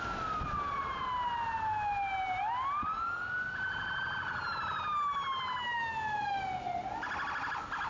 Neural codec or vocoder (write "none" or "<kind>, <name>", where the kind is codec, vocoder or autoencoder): none